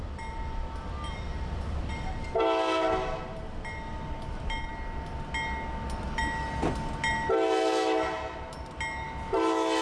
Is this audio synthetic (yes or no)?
no